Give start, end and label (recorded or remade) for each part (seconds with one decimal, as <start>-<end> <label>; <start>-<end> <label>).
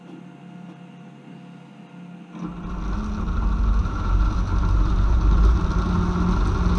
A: 0.0-3.8 recorded; 3.8-5.6 remade; 5.6-6.8 recorded